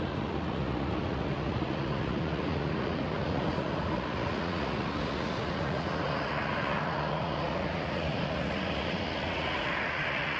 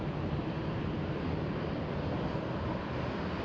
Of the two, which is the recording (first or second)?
second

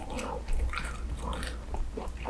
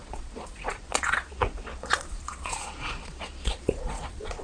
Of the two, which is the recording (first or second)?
first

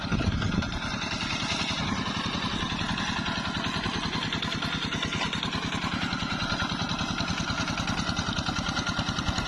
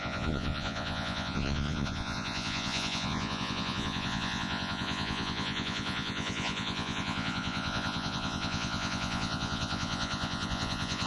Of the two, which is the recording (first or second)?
first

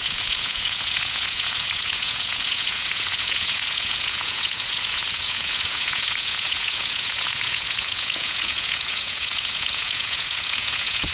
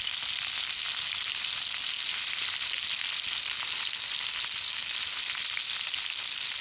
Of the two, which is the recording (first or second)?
second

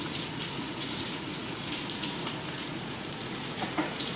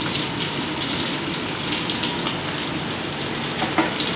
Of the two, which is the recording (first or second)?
second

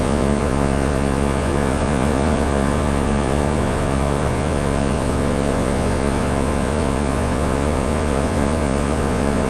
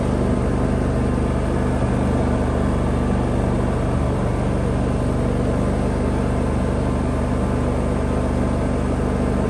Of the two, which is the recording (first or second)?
second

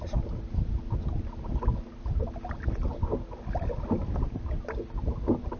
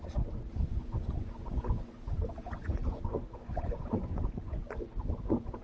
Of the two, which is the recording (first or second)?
first